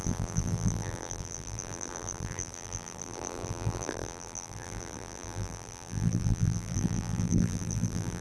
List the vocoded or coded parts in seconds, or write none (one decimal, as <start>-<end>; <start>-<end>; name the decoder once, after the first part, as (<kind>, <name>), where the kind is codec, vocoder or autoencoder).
0.0-8.2 (vocoder, BigVGAN v2)

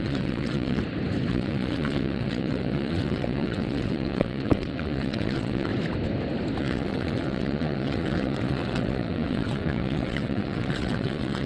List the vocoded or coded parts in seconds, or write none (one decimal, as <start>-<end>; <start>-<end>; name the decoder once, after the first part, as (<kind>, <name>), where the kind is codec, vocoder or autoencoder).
0.0-0.8 (vocoder, WaveNeXt); 1.3-5.7; 6.6-11.5